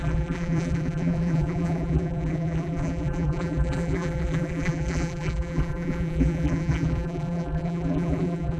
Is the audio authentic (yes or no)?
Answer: no